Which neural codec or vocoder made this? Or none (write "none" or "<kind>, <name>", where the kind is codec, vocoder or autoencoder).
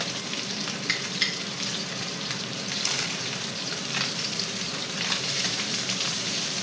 vocoder, BigVGAN v2